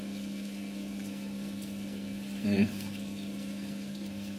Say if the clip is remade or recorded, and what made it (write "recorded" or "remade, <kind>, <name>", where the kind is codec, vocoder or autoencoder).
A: remade, codec, SNAC